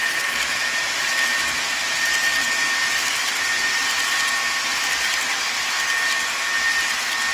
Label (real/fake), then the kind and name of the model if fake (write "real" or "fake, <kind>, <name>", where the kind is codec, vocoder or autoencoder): real